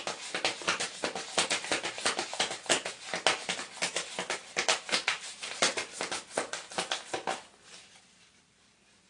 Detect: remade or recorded recorded